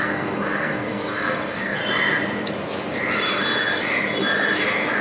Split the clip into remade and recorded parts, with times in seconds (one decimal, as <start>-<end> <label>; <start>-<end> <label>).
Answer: 0.0-1.8 remade; 1.8-5.0 recorded